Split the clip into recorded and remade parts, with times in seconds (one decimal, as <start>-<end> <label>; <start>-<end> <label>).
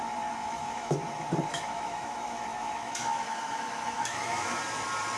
0.0-0.4 recorded; 0.4-1.0 remade; 1.0-1.5 recorded; 1.5-4.6 remade; 4.6-5.2 recorded